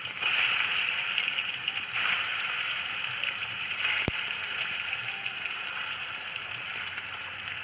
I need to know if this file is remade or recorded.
remade